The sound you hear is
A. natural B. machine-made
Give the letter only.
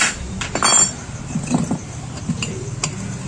A